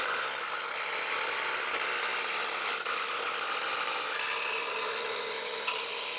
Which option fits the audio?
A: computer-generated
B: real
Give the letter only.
B